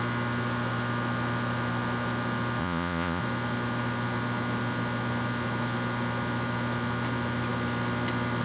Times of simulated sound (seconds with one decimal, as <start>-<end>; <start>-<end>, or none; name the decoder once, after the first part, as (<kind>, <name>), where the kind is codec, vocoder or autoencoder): 2.6-3.2 (vocoder, Vocos)